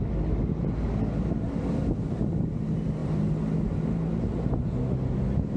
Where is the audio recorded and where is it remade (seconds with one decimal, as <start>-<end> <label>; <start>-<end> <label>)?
0.0-5.6 recorded